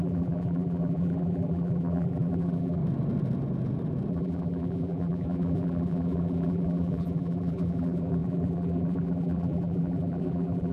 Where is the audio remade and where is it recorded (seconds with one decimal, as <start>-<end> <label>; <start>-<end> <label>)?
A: 0.0-2.8 remade; 2.8-4.1 recorded; 4.1-10.7 remade